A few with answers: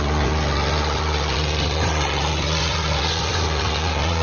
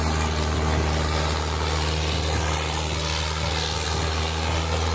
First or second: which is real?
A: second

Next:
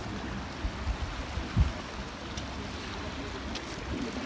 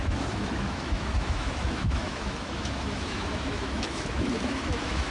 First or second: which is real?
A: first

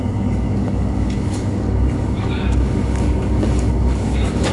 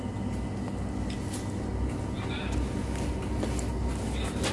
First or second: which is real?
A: second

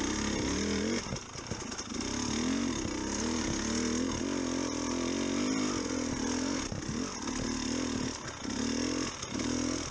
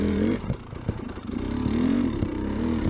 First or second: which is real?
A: first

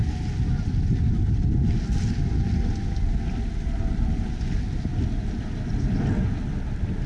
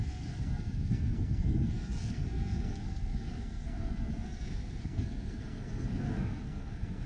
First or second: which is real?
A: first